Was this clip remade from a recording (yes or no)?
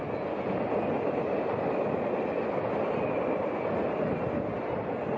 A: no